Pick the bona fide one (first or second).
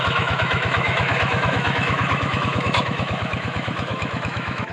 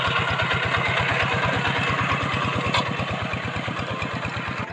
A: second